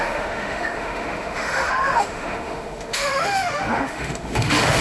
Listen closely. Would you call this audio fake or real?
fake